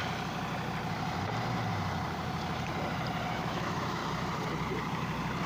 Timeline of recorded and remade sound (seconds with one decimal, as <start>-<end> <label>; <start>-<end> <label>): 0.0-3.3 recorded; 3.3-4.0 remade; 4.0-5.5 recorded